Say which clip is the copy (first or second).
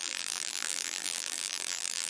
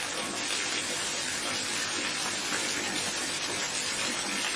first